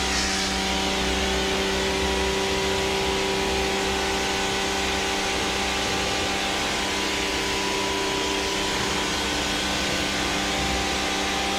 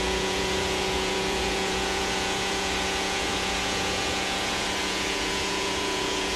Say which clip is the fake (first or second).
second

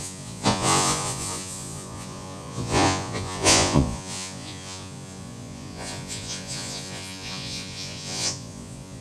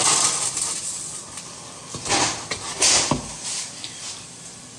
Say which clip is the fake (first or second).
first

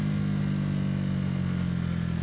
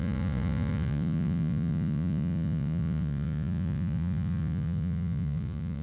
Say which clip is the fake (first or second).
second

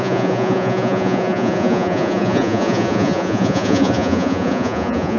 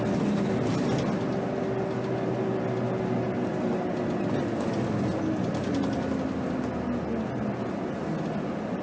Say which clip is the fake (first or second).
first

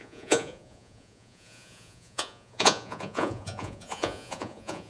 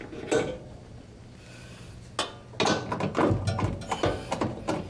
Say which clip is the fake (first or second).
first